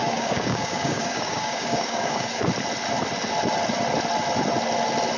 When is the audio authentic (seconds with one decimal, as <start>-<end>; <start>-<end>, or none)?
2.4-5.2